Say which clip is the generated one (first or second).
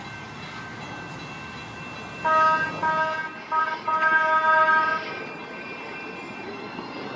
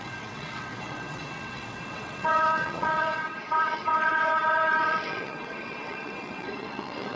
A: second